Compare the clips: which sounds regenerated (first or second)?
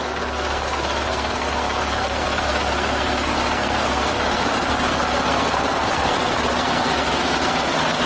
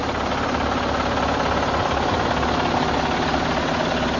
first